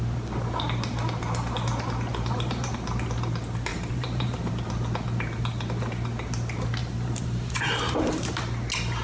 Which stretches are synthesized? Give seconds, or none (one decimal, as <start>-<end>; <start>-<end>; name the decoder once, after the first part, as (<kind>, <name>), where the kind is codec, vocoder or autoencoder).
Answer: 2.1-2.7 (vocoder, BigVGAN v2); 3.7-4.5; 6.8-8.4